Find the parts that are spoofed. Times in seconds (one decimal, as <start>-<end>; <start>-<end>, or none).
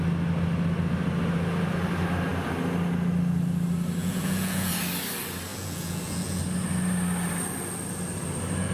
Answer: 4.0-4.7; 5.5-6.4